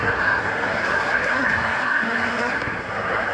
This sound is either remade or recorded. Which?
remade